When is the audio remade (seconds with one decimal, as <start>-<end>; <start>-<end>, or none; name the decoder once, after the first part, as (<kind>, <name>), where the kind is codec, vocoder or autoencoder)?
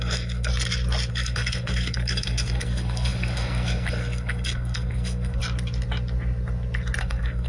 0.0-0.5 (codec, SNAC); 1.1-5.4; 7.0-7.5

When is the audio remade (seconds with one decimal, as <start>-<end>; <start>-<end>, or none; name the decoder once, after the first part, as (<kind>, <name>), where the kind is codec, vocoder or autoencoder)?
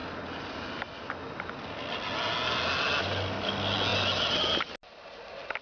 none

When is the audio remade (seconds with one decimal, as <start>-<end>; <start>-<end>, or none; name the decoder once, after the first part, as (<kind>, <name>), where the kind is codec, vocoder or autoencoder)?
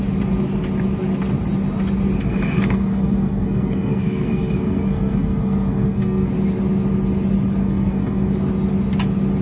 2.2-6.3 (codec, SNAC); 7.6-8.3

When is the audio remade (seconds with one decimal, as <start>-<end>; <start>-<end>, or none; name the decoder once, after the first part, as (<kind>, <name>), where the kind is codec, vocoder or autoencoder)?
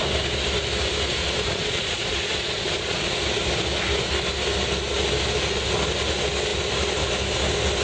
1.2-3.1 (vocoder, Vocos)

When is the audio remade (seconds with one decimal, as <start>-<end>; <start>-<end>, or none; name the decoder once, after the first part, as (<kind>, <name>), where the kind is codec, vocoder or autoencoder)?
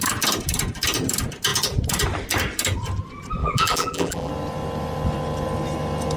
3.4-4.3 (vocoder, BigVGAN v2)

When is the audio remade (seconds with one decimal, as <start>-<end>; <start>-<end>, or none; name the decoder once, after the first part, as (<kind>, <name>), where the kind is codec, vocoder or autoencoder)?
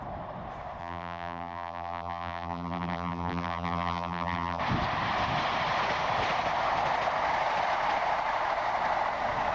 0.8-4.6 (vocoder, BigVGAN v2)